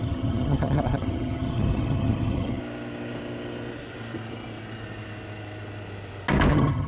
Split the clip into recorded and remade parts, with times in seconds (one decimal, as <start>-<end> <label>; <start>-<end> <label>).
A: 0.0-2.6 remade; 2.6-6.5 recorded; 6.5-6.9 remade